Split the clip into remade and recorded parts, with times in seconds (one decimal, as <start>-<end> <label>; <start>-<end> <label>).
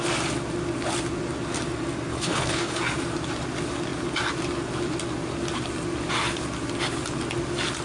0.0-2.1 recorded; 2.1-2.8 remade; 2.8-7.8 recorded